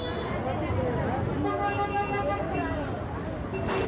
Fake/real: real